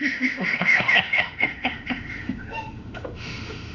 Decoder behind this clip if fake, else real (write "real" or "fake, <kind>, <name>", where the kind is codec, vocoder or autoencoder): fake, autoencoder, DAC-VAE